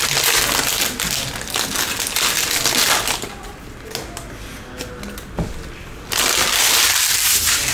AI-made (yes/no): no